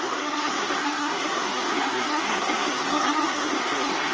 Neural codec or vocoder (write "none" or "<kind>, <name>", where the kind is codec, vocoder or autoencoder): codec, SNAC